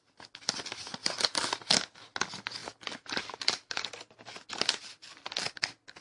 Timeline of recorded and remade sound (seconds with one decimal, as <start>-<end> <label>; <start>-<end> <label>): 0.0-1.0 recorded; 1.0-1.7 remade; 1.7-2.6 recorded; 2.6-6.0 remade